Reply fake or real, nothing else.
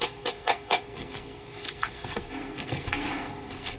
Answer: fake